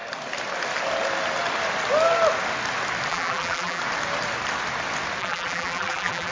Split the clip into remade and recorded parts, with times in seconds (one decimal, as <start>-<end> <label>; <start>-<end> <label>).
0.0-3.1 recorded; 3.1-3.8 remade; 3.8-5.2 recorded; 5.2-6.3 remade